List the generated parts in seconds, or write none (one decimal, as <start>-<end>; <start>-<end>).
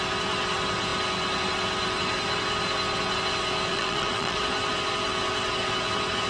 3.7-4.4